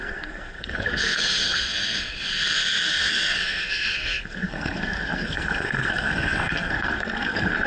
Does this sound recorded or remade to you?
remade